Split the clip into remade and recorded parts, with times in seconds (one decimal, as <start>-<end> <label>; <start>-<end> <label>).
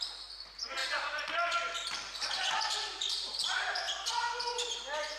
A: 0.0-0.8 recorded; 0.8-3.9 remade; 3.9-5.2 recorded